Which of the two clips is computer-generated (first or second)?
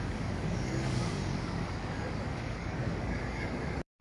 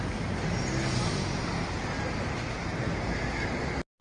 first